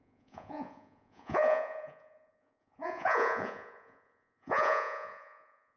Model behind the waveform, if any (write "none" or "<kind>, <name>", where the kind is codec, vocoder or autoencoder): vocoder, Vocos